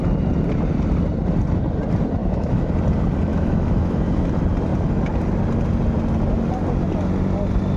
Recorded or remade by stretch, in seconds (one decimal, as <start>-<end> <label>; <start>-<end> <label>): 0.0-2.2 recorded; 2.2-2.7 remade; 2.7-3.3 recorded; 3.3-4.3 remade; 4.3-7.8 recorded